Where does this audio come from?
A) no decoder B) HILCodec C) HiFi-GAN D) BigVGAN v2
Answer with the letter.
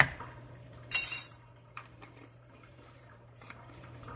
D